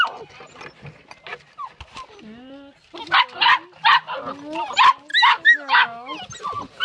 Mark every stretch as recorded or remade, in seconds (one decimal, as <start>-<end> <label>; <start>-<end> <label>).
0.0-5.1 recorded; 5.1-6.2 remade; 6.2-6.8 recorded